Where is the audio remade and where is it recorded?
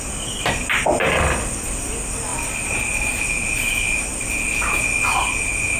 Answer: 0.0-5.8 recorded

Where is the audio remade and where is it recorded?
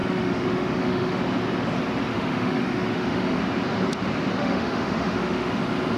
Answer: 0.0-1.2 remade; 1.2-2.1 recorded; 2.1-3.4 remade; 3.4-4.4 recorded; 4.4-5.6 remade; 5.6-6.0 recorded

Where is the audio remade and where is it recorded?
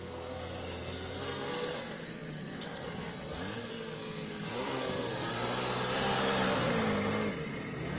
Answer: 0.0-5.3 remade; 5.3-8.0 recorded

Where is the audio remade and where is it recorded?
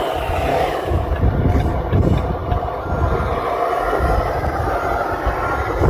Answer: 0.0-0.5 recorded; 0.5-1.1 remade; 1.1-5.9 recorded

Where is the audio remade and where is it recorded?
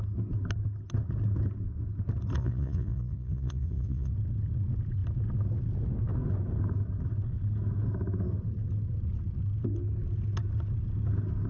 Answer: 0.0-2.4 recorded; 2.4-4.1 remade; 4.1-11.5 recorded